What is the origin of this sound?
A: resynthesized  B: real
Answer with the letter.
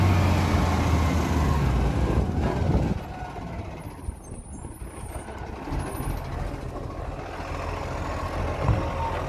B